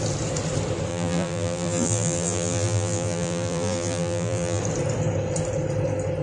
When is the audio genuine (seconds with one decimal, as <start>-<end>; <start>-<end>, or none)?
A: 0.0-0.9; 4.6-6.2